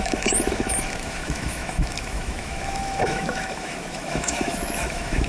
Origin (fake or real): fake